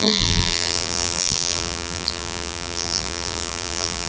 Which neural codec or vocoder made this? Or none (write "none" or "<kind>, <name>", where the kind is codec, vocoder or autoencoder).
vocoder, BigVGAN v2